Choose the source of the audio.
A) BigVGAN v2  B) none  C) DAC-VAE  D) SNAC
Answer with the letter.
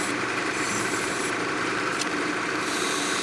A